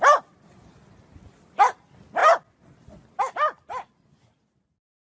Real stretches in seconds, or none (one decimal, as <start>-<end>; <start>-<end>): 0.0-5.0